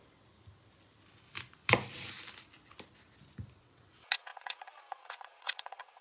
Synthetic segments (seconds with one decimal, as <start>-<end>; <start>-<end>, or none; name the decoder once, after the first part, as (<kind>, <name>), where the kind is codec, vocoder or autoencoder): 3.6-6.0 (vocoder, WaveNeXt)